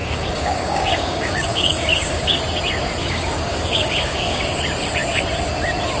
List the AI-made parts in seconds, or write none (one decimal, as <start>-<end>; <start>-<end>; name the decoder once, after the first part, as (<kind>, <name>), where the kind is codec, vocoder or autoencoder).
0.0-2.4 (codec, DAC); 3.0-4.4